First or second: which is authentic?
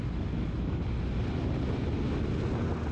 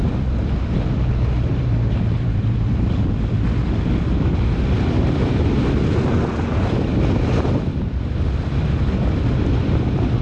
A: first